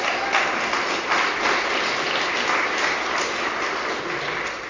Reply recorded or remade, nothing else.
recorded